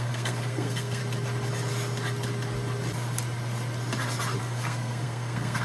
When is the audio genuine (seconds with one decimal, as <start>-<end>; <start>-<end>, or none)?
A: 1.0-4.4